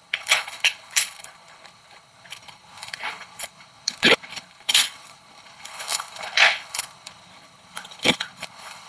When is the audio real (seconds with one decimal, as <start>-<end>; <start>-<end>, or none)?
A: none